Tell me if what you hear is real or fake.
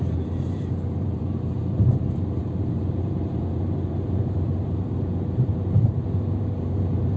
fake